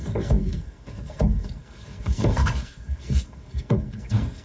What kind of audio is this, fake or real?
fake